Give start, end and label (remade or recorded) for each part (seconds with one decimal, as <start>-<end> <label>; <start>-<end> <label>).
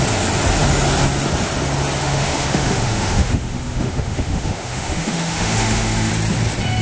0.0-2.0 recorded; 2.0-6.1 remade; 6.1-6.8 recorded